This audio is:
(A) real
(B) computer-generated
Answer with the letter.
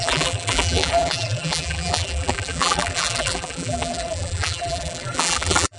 B